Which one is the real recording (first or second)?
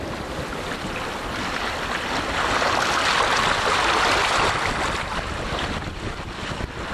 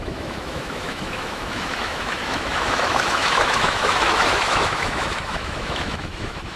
first